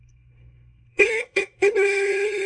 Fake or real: fake